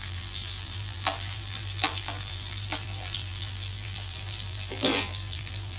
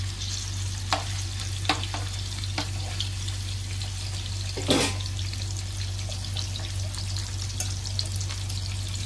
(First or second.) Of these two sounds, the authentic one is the second